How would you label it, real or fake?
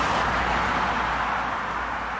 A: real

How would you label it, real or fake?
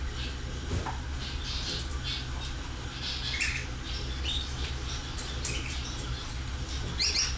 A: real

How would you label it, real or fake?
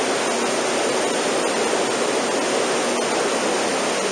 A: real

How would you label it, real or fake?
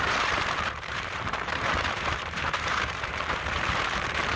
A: fake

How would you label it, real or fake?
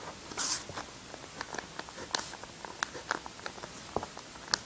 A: real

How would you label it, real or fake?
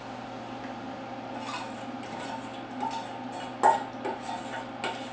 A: real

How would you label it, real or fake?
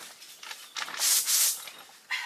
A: real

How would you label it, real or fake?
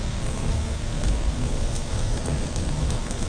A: fake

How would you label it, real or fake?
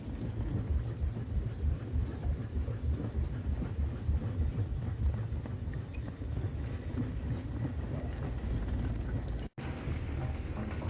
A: real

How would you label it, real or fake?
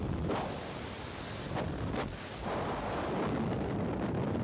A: real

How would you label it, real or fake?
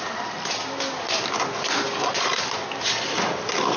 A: real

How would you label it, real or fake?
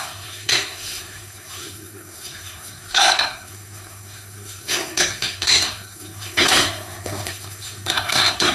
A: fake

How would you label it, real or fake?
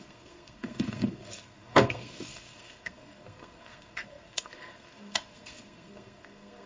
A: fake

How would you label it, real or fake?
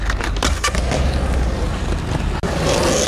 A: real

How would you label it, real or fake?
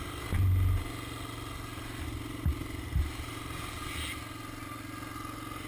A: real